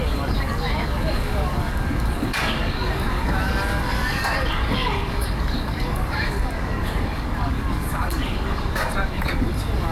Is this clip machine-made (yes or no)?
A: yes